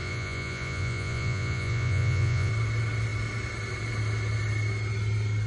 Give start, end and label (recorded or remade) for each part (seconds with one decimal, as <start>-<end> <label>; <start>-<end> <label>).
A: 0.0-2.5 remade; 2.5-5.5 recorded